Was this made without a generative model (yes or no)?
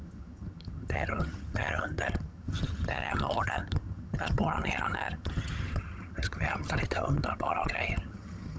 no